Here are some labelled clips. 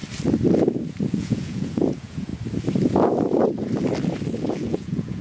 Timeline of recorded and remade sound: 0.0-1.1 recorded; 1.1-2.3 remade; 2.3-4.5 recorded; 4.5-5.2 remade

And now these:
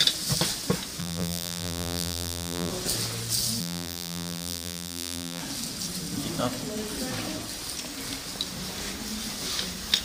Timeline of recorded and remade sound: 0.0-1.0 recorded; 1.0-2.7 remade; 2.7-3.6 recorded; 3.6-5.4 remade; 5.4-10.0 recorded

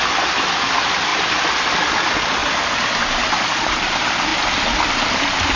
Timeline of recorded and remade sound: 0.0-2.4 recorded; 2.4-3.4 remade; 3.4-5.6 recorded

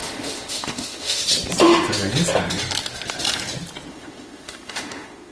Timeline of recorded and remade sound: 0.0-1.2 remade; 1.2-3.9 recorded; 3.9-5.3 remade